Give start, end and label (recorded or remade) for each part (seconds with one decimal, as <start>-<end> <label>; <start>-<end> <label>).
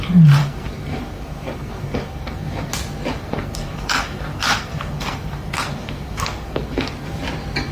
0.0-0.4 recorded; 0.4-2.7 remade; 2.7-3.2 recorded; 3.2-7.2 remade; 7.2-7.7 recorded